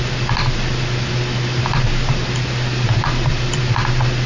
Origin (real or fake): real